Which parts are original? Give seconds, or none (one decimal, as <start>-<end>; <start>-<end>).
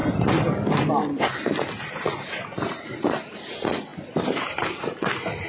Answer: 0.0-1.9; 2.9-3.5; 3.9-4.7